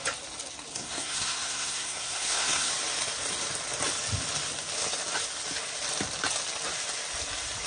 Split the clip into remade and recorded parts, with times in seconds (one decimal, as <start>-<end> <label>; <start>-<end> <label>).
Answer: 0.0-0.7 recorded; 0.7-2.7 remade; 2.7-7.7 recorded